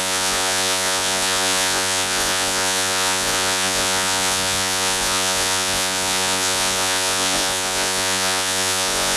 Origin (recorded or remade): remade